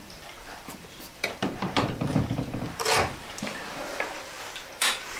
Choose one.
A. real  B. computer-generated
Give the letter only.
B